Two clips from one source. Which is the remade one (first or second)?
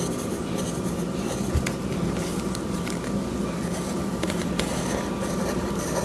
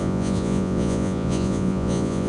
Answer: second